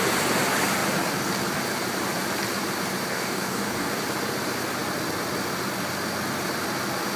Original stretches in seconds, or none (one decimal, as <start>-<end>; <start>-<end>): 0.0-3.1; 4.0-7.2